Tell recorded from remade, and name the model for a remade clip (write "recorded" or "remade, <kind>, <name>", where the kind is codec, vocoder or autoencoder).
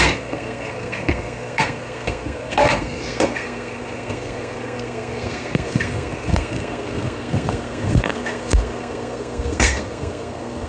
remade, codec, SNAC